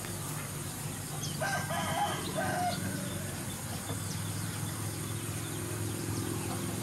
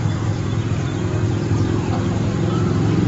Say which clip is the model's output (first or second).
second